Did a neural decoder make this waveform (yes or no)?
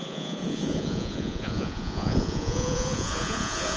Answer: yes